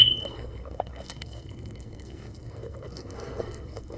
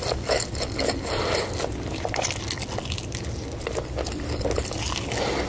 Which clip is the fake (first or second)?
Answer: first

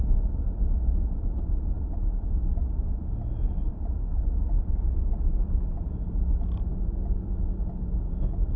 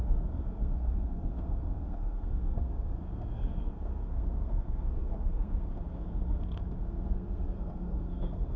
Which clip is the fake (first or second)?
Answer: second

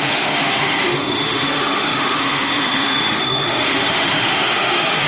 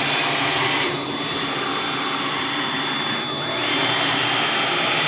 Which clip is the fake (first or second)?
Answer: first